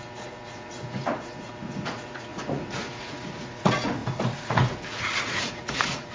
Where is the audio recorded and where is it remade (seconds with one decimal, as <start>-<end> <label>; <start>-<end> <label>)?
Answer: 0.0-6.1 remade